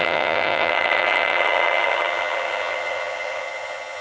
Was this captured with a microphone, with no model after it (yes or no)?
no